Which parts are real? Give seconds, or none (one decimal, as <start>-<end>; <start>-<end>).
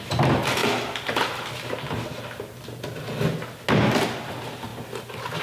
0.0-5.4